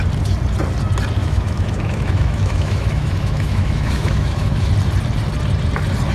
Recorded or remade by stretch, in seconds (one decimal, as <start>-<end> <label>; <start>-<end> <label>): 0.0-1.2 recorded; 1.2-4.7 remade; 4.7-6.1 recorded